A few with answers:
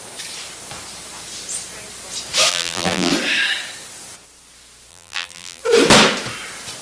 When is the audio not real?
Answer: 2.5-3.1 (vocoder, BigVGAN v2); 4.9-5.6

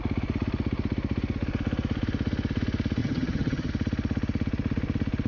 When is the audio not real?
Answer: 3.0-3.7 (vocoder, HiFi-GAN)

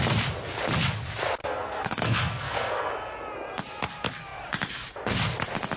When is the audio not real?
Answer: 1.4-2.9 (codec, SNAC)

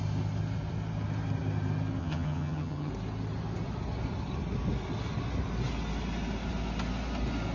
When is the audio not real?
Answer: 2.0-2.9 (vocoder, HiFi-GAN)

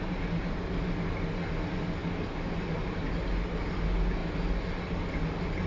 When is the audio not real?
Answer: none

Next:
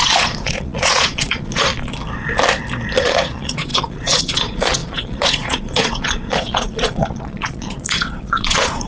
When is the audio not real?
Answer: 0.0-1.7 (vocoder, Vocos); 3.0-8.9

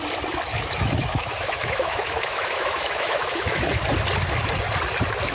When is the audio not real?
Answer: 0.5-3.7 (autoencoder, DAC-VAE)